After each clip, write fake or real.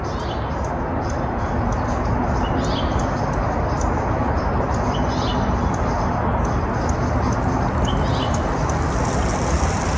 real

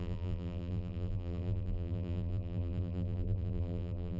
fake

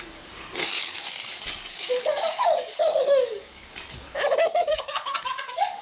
fake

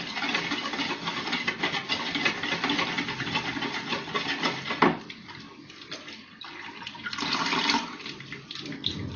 real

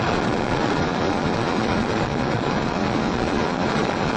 fake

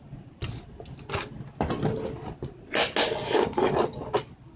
real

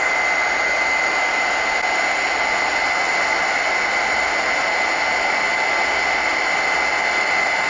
real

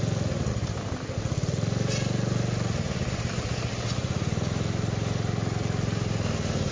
real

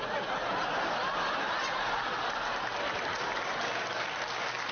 real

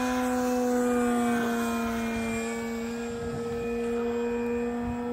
real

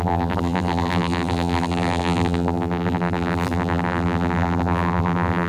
fake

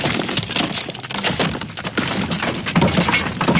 real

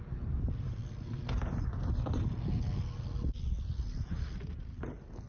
real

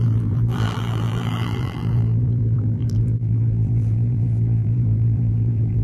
fake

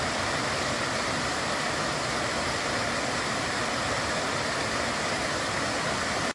real